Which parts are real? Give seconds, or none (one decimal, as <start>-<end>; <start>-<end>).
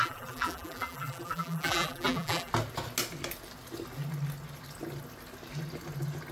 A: 2.5-6.3